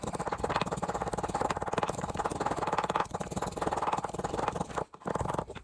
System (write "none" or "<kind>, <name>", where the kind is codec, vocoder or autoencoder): vocoder, BigVGAN v2